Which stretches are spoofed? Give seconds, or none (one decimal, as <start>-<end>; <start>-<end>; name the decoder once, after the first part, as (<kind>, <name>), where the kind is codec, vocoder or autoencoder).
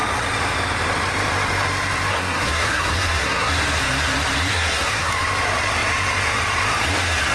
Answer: 2.1-3.5 (codec, SNAC); 4.5-5.1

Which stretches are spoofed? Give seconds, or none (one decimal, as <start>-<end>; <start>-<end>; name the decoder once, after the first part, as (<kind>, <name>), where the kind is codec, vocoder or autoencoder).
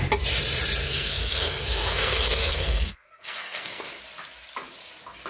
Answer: 0.8-4.0 (codec, SNAC)